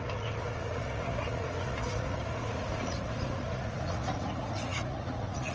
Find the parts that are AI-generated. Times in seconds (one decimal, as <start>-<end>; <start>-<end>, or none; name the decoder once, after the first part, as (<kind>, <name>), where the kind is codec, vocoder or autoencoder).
0.0-5.5 (vocoder, Vocos)